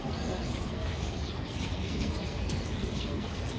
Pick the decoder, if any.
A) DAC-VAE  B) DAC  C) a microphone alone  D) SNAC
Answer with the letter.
D